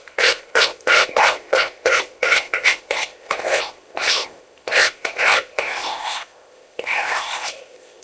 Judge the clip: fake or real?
fake